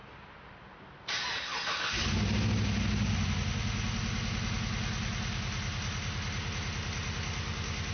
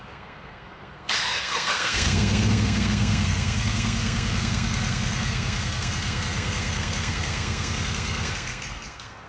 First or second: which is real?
first